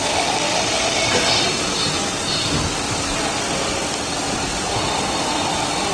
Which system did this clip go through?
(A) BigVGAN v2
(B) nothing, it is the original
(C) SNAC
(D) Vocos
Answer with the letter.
B